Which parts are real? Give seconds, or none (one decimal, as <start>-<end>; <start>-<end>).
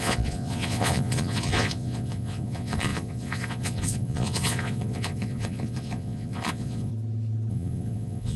6.9-7.5